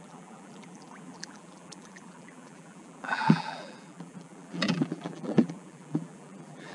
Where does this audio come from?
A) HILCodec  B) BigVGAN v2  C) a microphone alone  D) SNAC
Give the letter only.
B